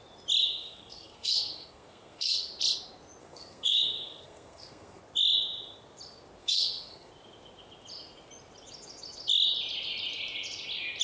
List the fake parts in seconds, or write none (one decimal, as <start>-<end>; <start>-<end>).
0.4-2.5; 3.2-5.0; 6.4-7.1